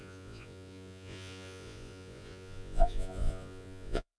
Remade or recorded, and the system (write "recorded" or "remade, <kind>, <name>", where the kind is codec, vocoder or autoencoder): remade, vocoder, Vocos